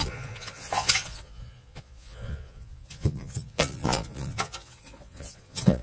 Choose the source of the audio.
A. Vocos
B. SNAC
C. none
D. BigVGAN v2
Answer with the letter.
A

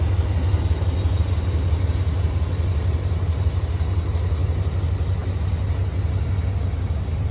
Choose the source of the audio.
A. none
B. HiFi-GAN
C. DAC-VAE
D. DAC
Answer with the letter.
A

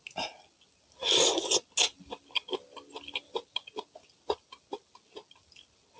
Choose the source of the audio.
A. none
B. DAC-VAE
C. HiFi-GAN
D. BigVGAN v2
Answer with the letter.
A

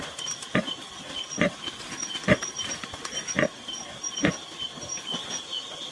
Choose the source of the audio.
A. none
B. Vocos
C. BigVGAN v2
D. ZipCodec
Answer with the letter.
A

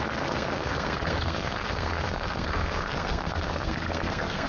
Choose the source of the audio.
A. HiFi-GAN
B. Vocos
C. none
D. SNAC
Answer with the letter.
D